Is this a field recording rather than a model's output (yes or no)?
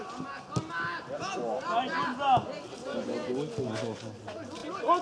yes